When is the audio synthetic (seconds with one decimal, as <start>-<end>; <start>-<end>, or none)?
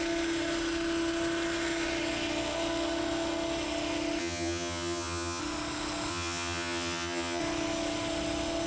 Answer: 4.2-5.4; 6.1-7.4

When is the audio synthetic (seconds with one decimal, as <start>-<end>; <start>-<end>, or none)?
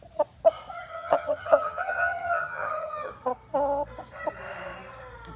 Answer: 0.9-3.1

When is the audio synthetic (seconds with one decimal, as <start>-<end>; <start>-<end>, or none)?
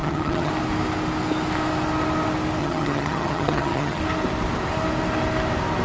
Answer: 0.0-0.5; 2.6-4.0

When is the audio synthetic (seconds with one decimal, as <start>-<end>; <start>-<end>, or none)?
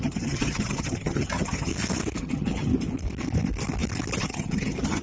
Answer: 0.0-1.7; 2.2-2.7; 4.2-5.0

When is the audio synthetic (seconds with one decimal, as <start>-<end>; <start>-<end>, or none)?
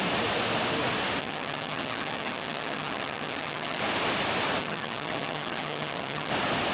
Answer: 1.2-3.8; 4.6-6.3